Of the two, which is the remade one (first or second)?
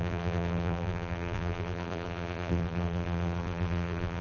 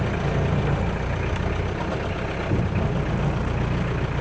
first